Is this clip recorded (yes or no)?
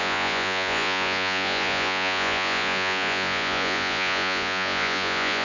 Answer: no